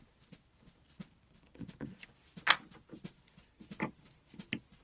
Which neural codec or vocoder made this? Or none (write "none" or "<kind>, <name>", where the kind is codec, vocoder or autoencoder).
none